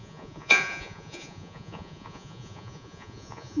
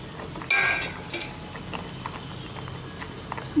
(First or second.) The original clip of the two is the second